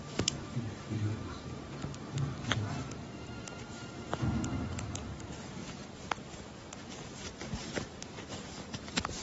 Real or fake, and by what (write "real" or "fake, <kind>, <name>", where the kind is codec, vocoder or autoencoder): fake, vocoder, BigVGAN v2